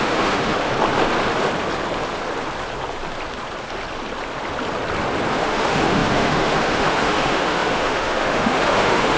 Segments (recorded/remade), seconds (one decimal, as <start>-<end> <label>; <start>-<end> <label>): 0.0-0.7 remade; 0.7-5.3 recorded; 5.3-9.2 remade